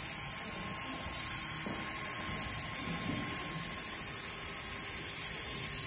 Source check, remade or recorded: recorded